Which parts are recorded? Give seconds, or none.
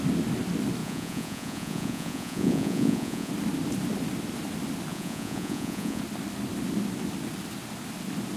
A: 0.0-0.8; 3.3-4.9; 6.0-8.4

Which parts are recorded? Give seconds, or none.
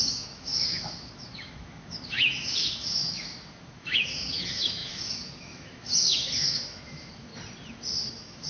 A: 7.3-8.1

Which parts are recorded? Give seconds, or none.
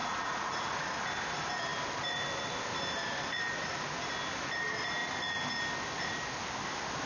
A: 0.9-7.1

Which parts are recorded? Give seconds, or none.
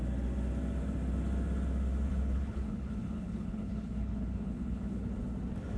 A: 0.0-2.1; 5.2-5.8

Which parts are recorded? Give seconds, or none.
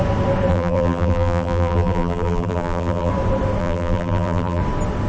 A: 0.0-0.5; 3.1-3.6; 4.6-5.1